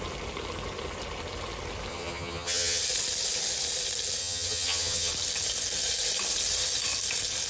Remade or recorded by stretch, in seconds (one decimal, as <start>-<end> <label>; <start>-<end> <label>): 0.0-1.9 recorded; 1.9-2.8 remade; 2.8-4.2 recorded; 4.2-5.1 remade; 5.1-7.5 recorded

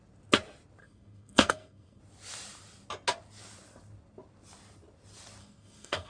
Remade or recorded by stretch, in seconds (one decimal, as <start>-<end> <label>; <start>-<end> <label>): 0.0-0.8 recorded; 0.8-2.0 remade; 2.0-5.4 recorded; 5.4-6.1 remade

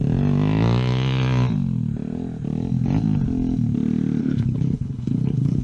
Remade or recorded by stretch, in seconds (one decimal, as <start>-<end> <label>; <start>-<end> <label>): 0.0-4.2 recorded; 4.2-5.6 remade

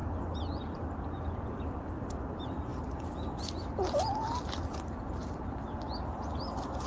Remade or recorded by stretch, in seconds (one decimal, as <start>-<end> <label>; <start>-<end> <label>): 0.0-6.9 recorded